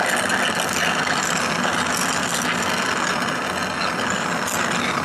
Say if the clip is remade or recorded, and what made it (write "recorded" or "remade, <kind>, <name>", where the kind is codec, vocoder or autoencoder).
recorded